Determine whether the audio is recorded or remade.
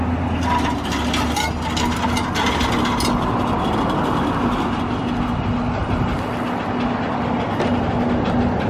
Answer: recorded